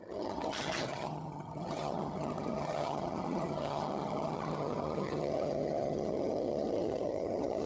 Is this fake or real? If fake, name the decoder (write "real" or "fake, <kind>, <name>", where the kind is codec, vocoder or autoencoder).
fake, vocoder, HiFi-GAN